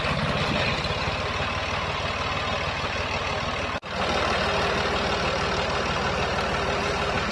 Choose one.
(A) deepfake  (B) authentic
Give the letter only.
B